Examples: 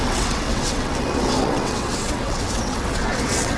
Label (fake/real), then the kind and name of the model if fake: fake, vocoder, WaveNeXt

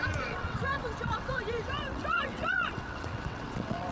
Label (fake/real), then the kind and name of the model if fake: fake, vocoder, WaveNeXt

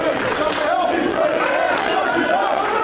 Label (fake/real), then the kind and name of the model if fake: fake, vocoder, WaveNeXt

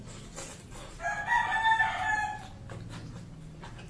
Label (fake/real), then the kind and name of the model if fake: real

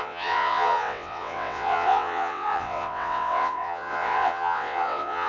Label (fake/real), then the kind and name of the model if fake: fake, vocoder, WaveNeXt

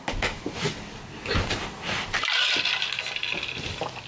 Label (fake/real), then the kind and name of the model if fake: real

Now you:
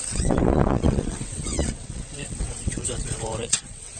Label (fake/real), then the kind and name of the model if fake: fake, vocoder, WaveNeXt